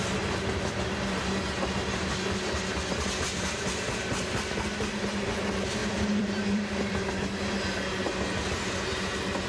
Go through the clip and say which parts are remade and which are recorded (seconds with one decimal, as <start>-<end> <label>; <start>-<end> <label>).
0.0-5.8 recorded; 5.8-7.0 remade; 7.0-9.5 recorded